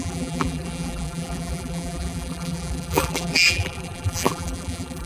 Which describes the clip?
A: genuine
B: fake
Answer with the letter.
B